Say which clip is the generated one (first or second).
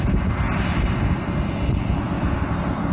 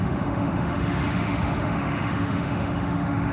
second